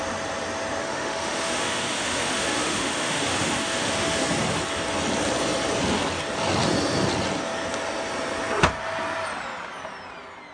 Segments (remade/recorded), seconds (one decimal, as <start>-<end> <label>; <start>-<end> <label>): 0.0-0.8 recorded; 0.8-4.2 remade; 4.2-10.5 recorded